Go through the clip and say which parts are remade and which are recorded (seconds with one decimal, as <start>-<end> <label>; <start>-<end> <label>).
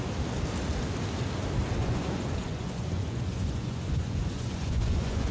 0.0-1.8 recorded; 1.8-5.3 remade